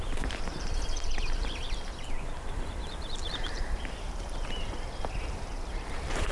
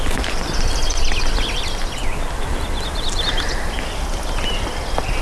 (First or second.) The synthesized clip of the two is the first